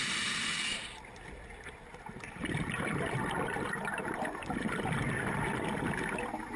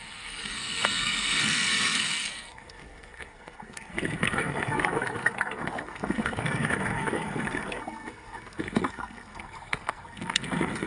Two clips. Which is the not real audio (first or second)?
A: second